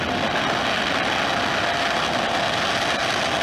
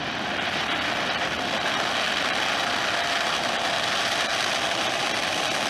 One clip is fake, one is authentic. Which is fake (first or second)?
second